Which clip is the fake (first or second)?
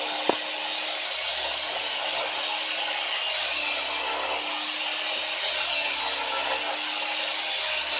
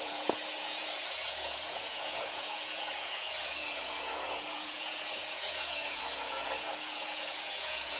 second